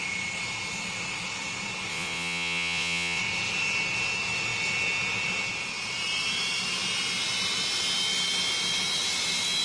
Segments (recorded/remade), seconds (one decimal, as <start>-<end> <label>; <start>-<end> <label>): 0.0-1.9 recorded; 1.9-3.2 remade; 3.2-9.6 recorded